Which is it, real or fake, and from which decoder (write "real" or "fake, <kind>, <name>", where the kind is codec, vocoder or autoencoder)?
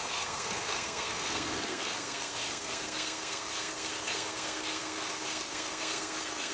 fake, codec, SNAC